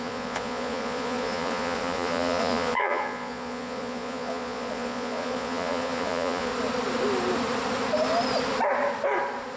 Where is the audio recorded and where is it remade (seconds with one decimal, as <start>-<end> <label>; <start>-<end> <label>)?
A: 0.0-6.5 remade; 6.5-9.6 recorded